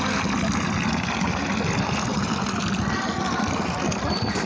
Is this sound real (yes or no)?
yes